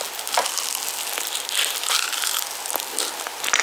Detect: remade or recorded recorded